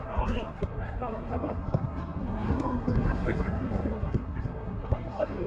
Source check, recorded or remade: remade